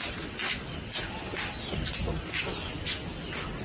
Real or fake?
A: real